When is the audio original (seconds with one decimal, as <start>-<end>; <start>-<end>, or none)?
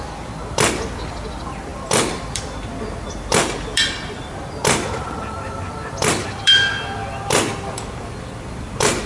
none